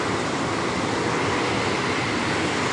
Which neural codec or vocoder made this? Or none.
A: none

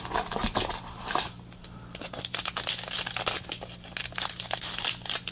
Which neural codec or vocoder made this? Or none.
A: none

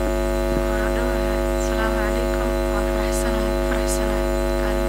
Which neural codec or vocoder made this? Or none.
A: none